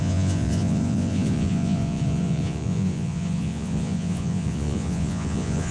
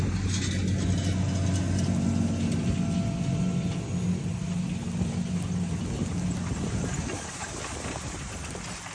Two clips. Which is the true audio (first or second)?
second